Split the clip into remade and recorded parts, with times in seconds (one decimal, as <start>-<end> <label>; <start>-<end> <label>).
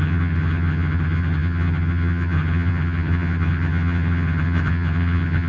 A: 0.0-5.5 remade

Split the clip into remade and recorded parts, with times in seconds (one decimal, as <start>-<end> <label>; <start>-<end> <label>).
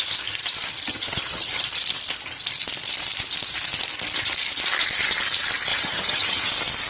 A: 0.0-0.9 recorded; 0.9-1.6 remade; 1.6-5.7 recorded; 5.7-6.5 remade; 6.5-6.9 recorded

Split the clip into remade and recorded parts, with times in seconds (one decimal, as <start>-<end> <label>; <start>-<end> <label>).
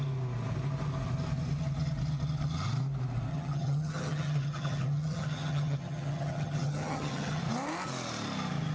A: 0.0-3.3 recorded; 3.3-7.4 remade; 7.4-8.7 recorded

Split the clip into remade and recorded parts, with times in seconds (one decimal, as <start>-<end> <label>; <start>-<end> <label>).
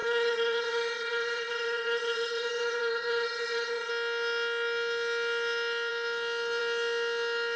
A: 0.0-3.9 remade; 3.9-7.6 recorded